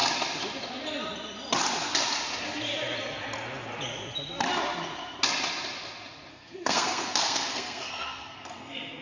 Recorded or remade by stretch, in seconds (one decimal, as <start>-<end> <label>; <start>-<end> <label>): 0.0-6.3 recorded; 6.3-9.0 remade